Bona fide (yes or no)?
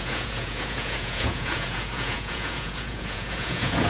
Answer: no